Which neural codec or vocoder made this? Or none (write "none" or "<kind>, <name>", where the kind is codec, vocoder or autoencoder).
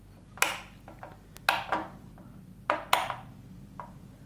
none